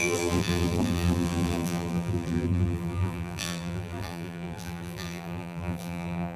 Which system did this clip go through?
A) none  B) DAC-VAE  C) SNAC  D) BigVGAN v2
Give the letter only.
D